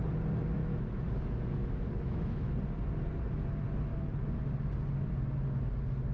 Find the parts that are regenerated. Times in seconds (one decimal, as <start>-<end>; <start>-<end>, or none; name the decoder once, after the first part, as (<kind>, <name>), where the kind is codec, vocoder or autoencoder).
0.6-2.5 (autoencoder, DAC-VAE)

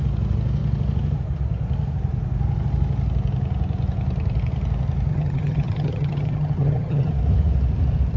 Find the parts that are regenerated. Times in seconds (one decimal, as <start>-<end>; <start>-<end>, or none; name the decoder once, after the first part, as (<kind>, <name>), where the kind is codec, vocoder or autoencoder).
5.1-7.1 (vocoder, HiFi-GAN)

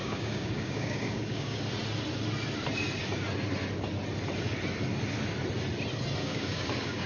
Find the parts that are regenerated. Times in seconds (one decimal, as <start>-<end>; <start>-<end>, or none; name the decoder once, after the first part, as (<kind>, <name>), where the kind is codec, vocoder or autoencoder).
0.0-1.6 (codec, DAC); 6.2-7.1

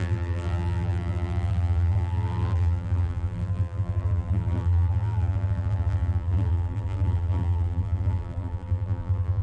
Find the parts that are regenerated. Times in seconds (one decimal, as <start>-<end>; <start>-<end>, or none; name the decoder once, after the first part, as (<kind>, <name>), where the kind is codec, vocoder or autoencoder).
0.0-9.4 (vocoder, BigVGAN v2)

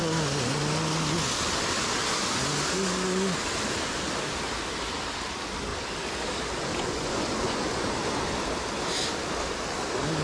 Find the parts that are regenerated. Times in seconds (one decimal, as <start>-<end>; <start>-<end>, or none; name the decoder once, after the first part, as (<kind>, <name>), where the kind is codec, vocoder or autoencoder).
6.7-7.8 (vocoder, Vocos)

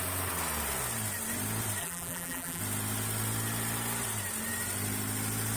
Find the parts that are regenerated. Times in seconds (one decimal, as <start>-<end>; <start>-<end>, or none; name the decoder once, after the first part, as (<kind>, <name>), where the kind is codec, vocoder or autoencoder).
1.8-2.6 (vocoder, BigVGAN v2)

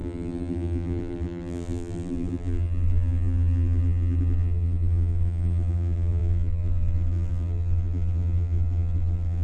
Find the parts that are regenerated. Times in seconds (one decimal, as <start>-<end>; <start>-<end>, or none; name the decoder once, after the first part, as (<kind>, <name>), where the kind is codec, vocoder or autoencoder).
0.0-9.4 (vocoder, BigVGAN v2)

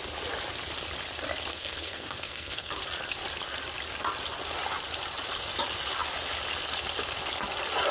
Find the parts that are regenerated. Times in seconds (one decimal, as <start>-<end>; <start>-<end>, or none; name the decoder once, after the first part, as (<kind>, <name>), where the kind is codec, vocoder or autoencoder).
1.5-2.8 (codec, SNAC)